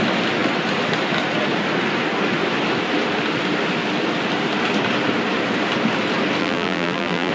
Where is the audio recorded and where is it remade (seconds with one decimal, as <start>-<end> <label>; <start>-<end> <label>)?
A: 0.0-6.4 recorded; 6.4-7.3 remade